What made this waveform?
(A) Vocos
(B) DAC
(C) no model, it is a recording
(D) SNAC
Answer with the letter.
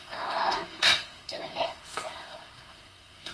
D